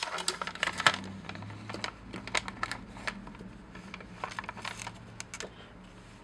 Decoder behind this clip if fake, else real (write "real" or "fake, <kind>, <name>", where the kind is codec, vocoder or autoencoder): real